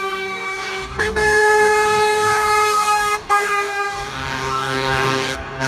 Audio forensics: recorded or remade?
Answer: remade